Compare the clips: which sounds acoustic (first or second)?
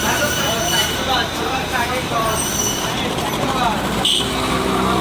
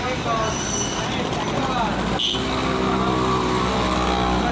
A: second